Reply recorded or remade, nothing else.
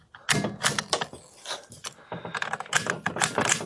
recorded